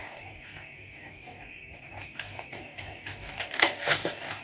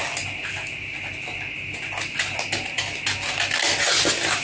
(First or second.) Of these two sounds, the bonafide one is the second